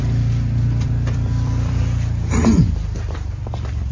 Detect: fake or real fake